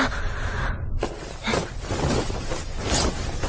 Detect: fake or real real